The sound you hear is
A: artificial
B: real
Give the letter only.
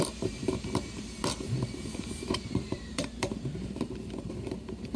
A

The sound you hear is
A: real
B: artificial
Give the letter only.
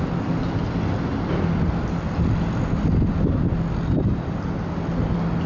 A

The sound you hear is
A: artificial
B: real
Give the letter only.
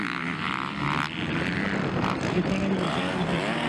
B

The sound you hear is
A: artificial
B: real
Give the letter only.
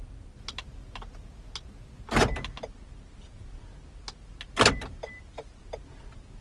B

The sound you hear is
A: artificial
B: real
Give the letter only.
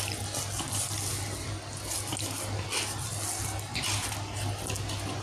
B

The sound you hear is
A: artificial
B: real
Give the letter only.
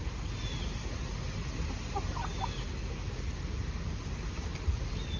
B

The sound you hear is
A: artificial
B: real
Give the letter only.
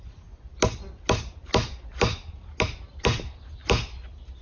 B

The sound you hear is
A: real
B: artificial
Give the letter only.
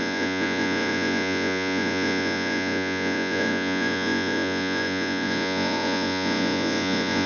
B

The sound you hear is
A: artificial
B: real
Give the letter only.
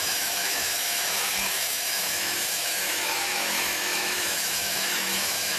A